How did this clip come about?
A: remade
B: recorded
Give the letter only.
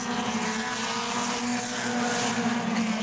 B